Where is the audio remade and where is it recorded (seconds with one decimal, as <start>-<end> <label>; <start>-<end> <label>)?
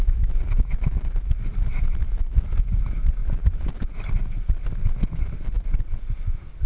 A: 0.0-6.7 recorded